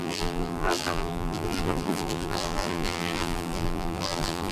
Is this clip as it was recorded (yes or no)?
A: no